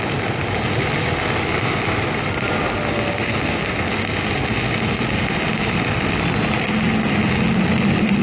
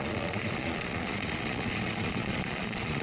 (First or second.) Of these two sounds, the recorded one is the first